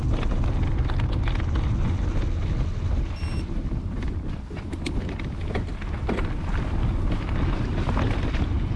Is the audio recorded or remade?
recorded